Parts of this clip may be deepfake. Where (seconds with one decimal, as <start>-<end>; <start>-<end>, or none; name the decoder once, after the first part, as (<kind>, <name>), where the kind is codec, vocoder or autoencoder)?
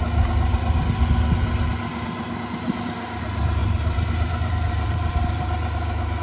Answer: 3.6-6.2 (vocoder, BigVGAN v2)